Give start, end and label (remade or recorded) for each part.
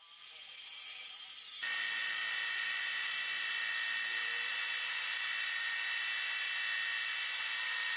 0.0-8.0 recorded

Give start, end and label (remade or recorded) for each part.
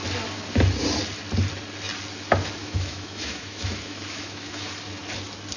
0.0-2.6 recorded; 2.6-4.7 remade; 4.7-5.6 recorded